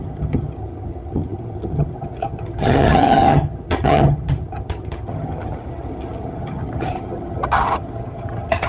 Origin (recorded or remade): remade